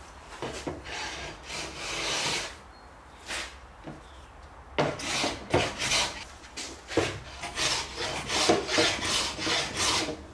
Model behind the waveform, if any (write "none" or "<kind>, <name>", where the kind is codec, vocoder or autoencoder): none